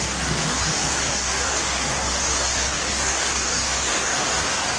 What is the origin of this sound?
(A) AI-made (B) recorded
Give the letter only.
A